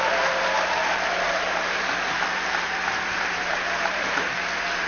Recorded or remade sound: remade